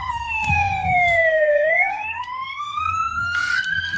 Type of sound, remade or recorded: remade